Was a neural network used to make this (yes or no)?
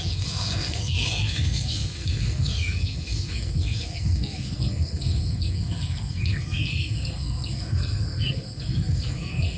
yes